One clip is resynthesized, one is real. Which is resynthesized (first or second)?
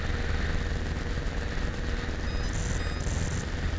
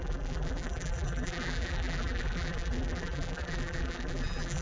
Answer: second